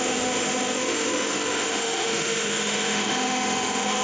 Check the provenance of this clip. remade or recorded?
remade